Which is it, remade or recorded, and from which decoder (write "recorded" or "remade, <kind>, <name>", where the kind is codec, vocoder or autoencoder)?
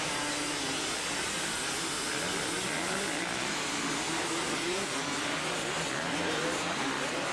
recorded